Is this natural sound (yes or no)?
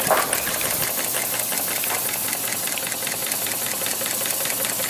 yes